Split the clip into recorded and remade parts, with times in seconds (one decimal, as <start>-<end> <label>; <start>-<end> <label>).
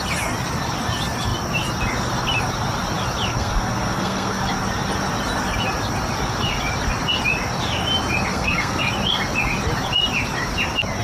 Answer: 0.0-3.3 recorded; 3.3-4.4 remade; 4.4-8.3 recorded; 8.3-8.9 remade; 8.9-11.0 recorded